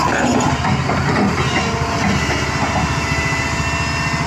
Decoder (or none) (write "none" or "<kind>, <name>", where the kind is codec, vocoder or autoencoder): none